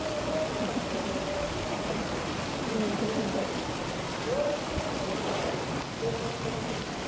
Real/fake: real